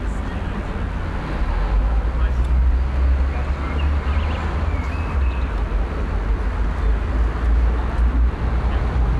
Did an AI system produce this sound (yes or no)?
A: no